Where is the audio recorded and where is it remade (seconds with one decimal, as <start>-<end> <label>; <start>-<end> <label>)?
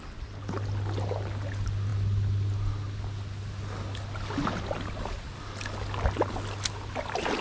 0.0-7.4 recorded